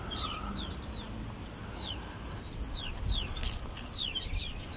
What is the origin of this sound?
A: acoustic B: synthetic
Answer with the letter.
A